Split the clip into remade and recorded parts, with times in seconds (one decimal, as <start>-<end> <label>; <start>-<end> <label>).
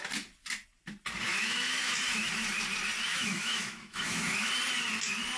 0.0-1.3 recorded; 1.3-2.3 remade; 2.3-3.1 recorded; 3.1-4.5 remade; 4.5-5.4 recorded